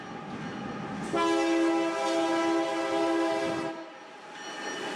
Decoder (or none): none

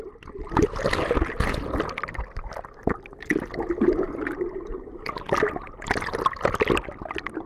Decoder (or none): none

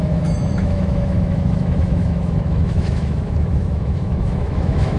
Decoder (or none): autoencoder, DAC-VAE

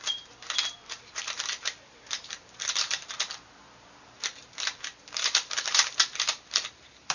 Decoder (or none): vocoder, BigVGAN v2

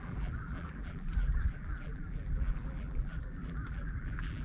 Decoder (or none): vocoder, BigVGAN v2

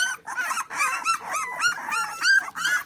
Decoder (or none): vocoder, BigVGAN v2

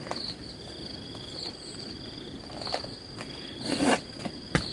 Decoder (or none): none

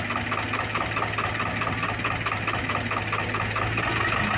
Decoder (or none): none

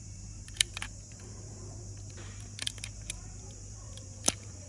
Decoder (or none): vocoder, BigVGAN v2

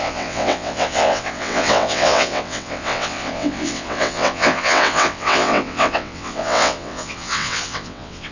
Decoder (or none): vocoder, WaveNeXt